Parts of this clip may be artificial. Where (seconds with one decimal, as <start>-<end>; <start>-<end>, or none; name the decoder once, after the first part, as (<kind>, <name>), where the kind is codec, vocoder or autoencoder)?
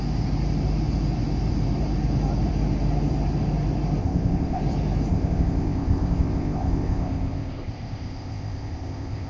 4.0-4.6 (codec, ZipCodec); 5.1-9.3